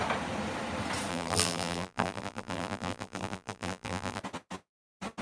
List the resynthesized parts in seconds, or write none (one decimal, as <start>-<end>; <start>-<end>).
1.1-4.2